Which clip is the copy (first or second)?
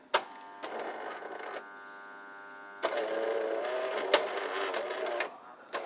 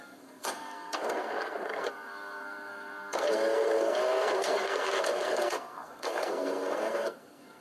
second